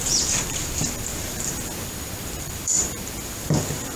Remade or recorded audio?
remade